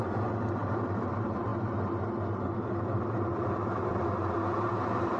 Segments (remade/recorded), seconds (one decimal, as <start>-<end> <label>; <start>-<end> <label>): 0.0-1.5 remade; 1.5-3.6 recorded; 3.6-5.2 remade